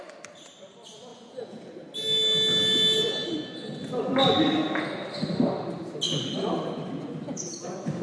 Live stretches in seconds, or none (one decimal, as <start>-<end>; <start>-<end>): 0.0-1.1; 1.7-8.0